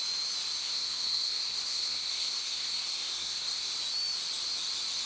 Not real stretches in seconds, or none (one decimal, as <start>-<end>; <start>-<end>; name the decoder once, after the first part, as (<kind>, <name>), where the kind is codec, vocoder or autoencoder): 0.6-3.7 (codec, SNAC)